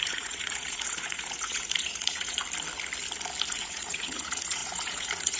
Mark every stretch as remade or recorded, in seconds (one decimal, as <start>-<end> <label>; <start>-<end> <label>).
0.0-2.4 remade; 2.4-3.5 recorded; 3.5-5.4 remade